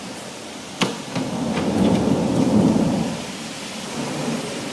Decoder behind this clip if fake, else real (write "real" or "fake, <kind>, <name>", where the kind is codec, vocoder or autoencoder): fake, vocoder, BigVGAN v2